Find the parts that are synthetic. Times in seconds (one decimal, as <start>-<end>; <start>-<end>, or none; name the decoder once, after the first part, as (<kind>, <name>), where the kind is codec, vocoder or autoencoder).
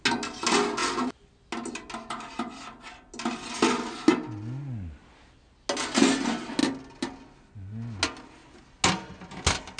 none